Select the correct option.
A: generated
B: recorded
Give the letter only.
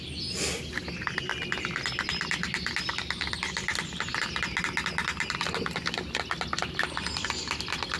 B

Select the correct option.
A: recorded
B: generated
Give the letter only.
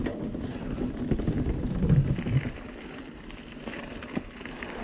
A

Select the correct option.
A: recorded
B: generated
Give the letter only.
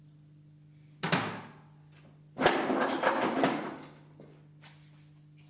A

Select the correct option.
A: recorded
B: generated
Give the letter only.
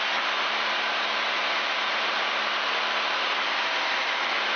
A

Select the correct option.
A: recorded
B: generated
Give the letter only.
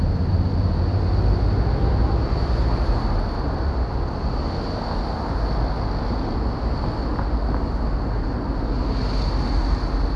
A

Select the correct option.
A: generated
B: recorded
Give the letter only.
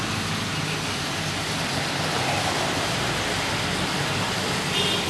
B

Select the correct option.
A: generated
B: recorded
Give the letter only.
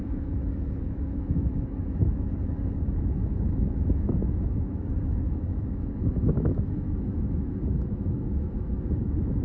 A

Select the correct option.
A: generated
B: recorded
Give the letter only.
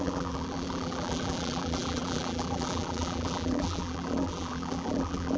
A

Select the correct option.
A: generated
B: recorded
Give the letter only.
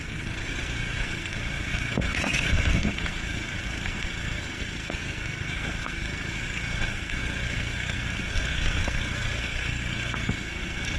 A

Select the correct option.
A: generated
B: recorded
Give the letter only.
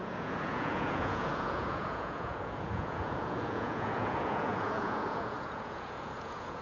A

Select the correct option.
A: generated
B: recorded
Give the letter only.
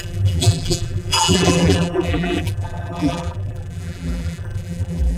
A